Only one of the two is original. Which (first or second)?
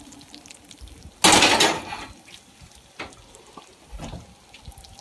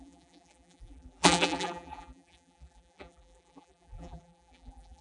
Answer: first